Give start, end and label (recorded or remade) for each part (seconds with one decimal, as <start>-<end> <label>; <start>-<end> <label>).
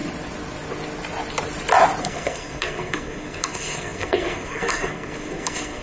0.0-2.0 recorded; 2.0-5.8 remade